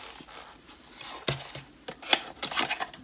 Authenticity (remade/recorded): recorded